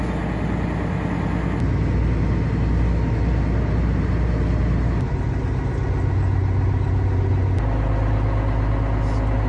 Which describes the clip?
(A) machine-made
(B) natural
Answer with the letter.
B